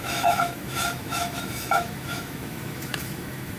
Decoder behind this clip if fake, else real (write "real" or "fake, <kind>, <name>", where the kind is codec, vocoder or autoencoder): fake, autoencoder, DAC-VAE